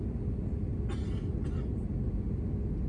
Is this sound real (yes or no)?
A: yes